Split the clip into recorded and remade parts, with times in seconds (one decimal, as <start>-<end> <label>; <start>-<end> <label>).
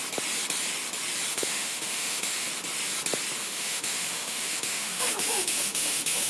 0.0-1.3 recorded; 1.3-2.5 remade; 2.5-3.4 recorded; 3.4-6.3 remade